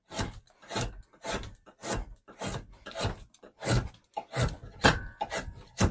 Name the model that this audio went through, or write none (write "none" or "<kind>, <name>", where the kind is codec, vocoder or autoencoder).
none